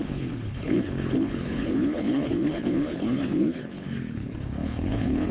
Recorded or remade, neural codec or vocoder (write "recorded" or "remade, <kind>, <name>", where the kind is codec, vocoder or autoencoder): remade, codec, HILCodec